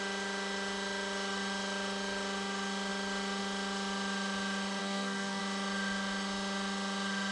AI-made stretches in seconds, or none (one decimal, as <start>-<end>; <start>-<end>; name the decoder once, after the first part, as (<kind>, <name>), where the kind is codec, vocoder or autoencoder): 4.8-5.4 (codec, SNAC)